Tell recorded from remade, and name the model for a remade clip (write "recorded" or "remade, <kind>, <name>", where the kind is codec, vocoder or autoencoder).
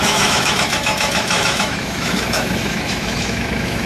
remade, autoencoder, DAC-VAE